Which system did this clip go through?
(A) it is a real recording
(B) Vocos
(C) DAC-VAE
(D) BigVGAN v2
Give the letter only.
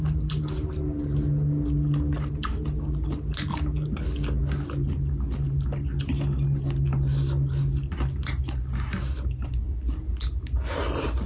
A